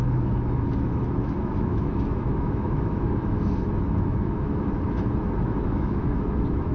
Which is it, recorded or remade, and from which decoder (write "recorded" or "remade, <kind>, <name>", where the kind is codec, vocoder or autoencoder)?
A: remade, autoencoder, DAC-VAE